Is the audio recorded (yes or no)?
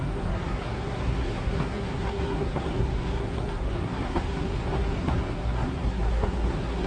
no